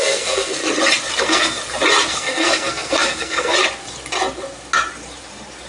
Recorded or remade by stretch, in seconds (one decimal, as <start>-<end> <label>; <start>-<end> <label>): 0.0-0.6 remade; 0.6-1.2 recorded; 1.2-1.6 remade; 1.6-2.1 recorded; 2.1-3.5 remade; 3.5-5.7 recorded